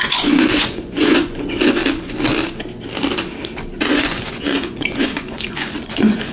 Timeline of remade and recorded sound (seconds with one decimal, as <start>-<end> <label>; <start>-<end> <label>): 0.0-1.8 remade; 1.8-3.9 recorded; 3.9-6.3 remade